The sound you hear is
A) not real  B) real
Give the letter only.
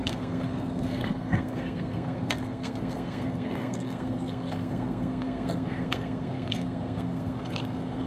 A